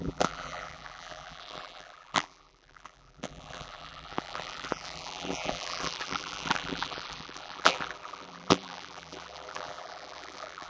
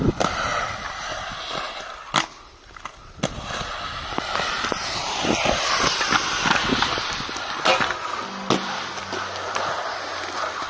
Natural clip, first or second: second